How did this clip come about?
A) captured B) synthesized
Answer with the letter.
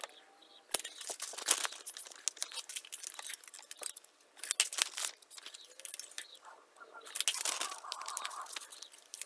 A